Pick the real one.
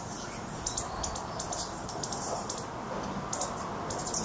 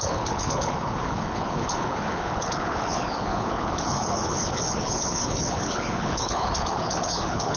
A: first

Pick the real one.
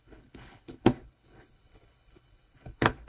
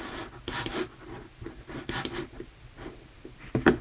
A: second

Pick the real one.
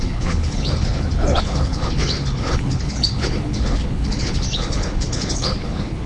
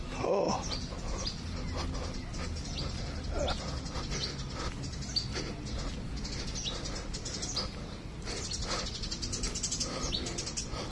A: second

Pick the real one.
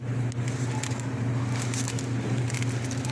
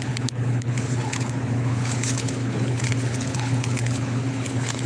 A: first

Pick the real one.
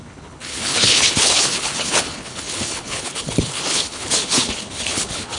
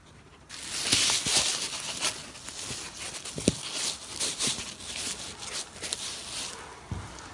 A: second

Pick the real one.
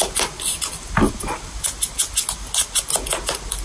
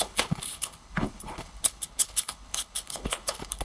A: first